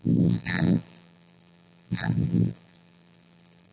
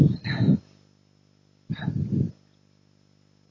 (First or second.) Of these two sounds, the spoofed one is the first